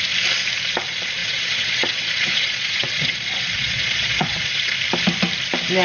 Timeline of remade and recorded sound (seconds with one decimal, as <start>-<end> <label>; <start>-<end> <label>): 0.0-1.2 recorded; 1.2-4.7 remade; 4.7-5.8 recorded

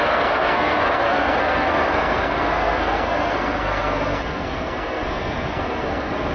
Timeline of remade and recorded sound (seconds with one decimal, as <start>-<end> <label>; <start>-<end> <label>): 0.0-6.3 remade

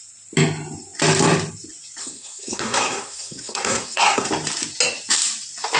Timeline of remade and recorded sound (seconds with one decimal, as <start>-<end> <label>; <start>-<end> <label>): 0.0-2.0 recorded; 2.0-4.3 remade; 4.3-5.8 recorded

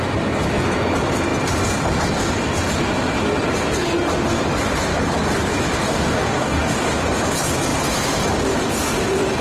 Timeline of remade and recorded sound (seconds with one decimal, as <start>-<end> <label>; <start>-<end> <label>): 0.0-5.8 recorded; 5.8-7.0 remade; 7.0-9.4 recorded

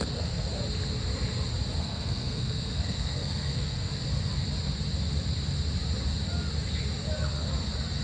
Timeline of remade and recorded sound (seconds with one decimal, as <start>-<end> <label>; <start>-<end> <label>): 0.0-0.5 remade; 0.5-1.8 recorded; 1.8-3.9 remade; 3.9-8.0 recorded